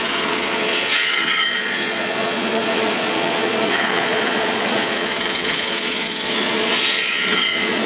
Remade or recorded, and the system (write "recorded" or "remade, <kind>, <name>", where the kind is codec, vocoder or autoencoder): remade, vocoder, Vocos